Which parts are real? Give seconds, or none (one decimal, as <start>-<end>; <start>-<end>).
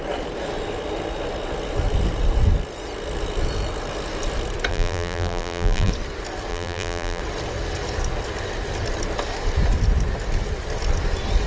0.0-4.7; 5.9-6.5; 7.2-11.5